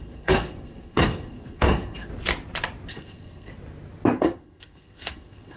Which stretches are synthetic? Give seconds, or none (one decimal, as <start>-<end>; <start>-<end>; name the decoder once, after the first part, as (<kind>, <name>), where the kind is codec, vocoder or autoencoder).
0.0-2.1 (codec, SNAC); 2.9-3.5; 4.2-5.6